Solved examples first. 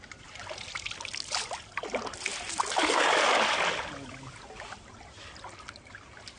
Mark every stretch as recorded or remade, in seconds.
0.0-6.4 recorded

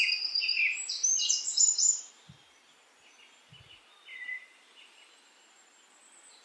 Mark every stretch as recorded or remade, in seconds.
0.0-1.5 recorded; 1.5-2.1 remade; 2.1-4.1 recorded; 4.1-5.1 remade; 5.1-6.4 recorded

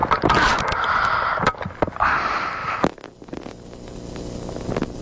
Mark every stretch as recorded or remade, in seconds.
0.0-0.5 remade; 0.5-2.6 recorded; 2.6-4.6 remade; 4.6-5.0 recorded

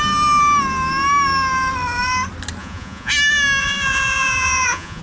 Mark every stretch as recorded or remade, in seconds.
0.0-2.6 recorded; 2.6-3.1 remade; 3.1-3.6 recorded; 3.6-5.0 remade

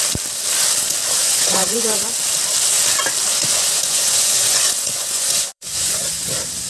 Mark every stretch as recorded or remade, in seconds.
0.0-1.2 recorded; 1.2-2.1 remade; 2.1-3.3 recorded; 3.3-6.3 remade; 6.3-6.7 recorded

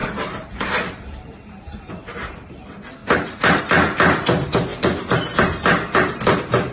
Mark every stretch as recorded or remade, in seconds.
0.0-1.9 remade; 1.9-4.7 recorded; 4.7-5.4 remade; 5.4-6.7 recorded

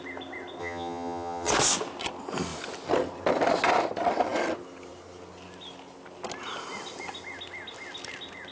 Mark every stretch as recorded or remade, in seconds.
0.0-0.6 recorded; 0.6-1.5 remade; 1.5-8.5 recorded